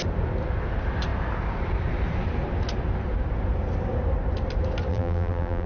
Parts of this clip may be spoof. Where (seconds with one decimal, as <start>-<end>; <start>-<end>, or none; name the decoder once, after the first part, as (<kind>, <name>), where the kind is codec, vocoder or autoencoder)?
4.9-5.7 (vocoder, BigVGAN v2)